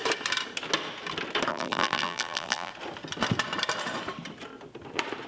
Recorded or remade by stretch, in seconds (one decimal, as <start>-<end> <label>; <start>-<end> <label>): 0.0-1.5 recorded; 1.5-2.7 remade; 2.7-5.3 recorded